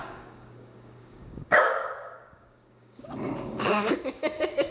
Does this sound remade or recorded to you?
remade